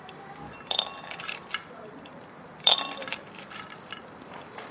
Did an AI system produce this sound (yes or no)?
yes